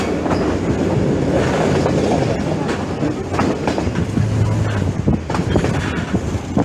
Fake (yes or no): no